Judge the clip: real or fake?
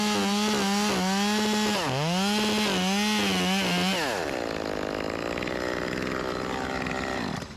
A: real